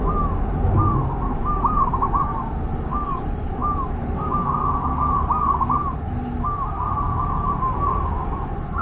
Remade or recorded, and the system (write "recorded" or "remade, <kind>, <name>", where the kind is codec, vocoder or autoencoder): recorded